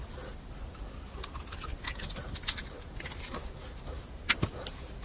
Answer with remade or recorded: recorded